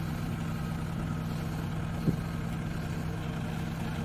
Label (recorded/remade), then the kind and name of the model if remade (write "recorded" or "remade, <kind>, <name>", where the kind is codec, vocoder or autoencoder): recorded